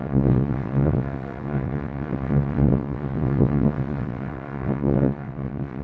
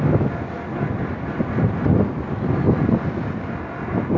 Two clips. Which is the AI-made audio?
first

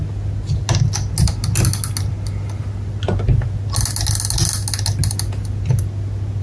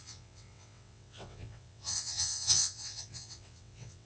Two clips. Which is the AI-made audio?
second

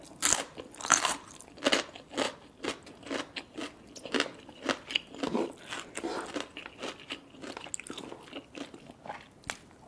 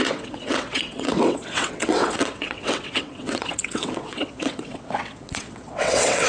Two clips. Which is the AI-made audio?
second